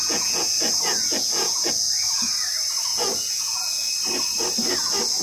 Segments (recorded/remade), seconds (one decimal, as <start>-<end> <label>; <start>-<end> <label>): 0.0-1.7 remade; 1.7-2.9 recorded; 2.9-3.9 remade; 3.9-5.2 recorded